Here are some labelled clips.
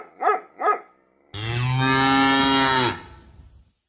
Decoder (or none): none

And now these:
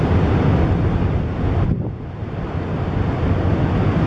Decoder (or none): none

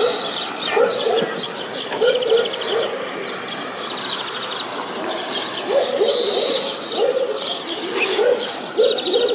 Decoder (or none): none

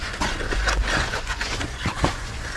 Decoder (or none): vocoder, Vocos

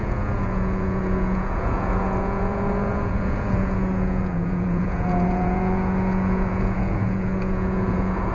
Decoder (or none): vocoder, Vocos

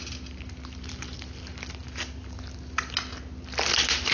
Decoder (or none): none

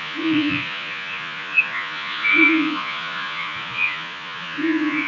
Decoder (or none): vocoder, Vocos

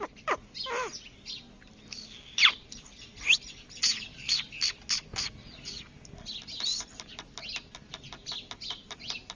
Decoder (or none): none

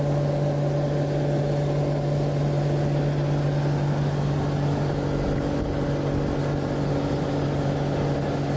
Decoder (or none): none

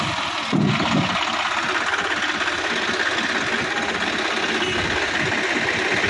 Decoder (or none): none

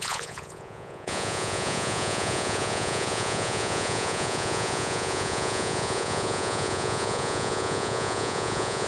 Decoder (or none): vocoder, Vocos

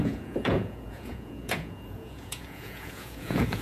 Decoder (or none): vocoder, Vocos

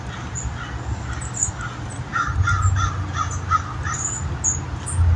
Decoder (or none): none